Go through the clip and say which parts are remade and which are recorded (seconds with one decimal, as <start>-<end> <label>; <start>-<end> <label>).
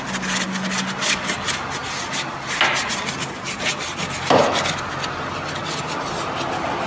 0.0-6.9 recorded